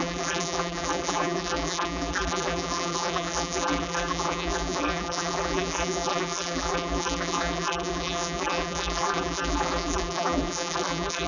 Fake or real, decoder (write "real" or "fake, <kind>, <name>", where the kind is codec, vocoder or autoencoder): fake, vocoder, BigVGAN v2